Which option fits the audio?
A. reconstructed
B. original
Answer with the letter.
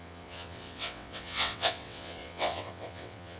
A